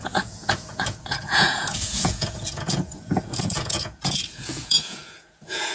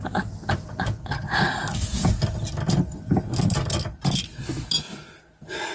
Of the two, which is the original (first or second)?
second